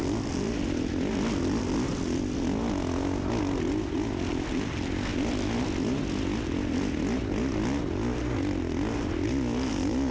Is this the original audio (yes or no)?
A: yes